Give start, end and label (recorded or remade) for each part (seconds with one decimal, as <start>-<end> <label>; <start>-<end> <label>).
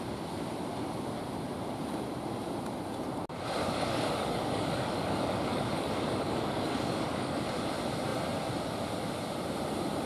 0.0-3.6 recorded; 3.6-7.7 remade; 7.7-10.1 recorded